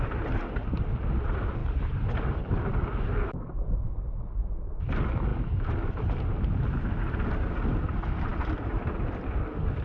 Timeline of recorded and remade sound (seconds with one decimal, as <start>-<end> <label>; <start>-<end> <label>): 0.0-1.6 recorded; 1.6-2.7 remade; 2.7-9.8 recorded